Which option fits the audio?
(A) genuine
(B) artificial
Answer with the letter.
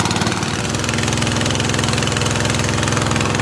A